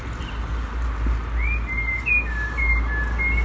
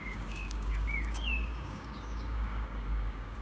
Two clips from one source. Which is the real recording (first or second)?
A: first